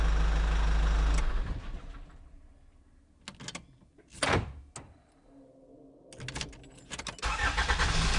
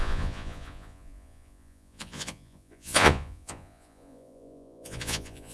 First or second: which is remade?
second